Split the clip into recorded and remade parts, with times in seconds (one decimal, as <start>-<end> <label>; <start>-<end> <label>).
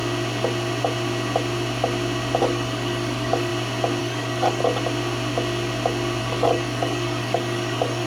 0.0-2.4 recorded; 2.4-3.5 remade; 3.5-4.0 recorded; 4.0-4.6 remade; 4.6-6.2 recorded; 6.2-8.1 remade